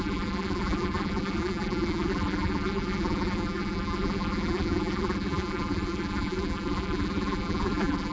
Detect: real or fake fake